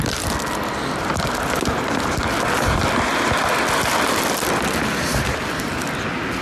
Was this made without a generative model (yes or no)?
yes